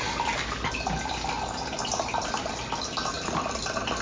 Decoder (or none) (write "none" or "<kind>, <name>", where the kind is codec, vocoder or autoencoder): none